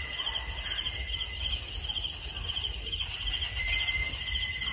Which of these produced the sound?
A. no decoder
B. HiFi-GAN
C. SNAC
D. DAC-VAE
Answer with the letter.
A